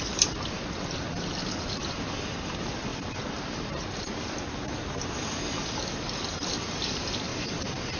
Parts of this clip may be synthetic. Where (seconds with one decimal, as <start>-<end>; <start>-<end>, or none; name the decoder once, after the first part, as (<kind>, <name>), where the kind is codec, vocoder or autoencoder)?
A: none